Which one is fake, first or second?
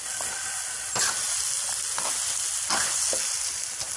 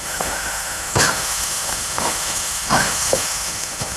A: second